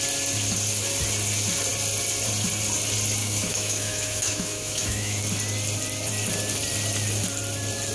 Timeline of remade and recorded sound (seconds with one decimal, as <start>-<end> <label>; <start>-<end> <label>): 0.0-3.2 recorded; 3.2-5.2 remade; 5.2-7.9 recorded